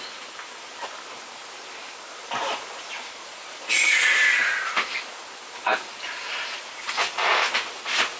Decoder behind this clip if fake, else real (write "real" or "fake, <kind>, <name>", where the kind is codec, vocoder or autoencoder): real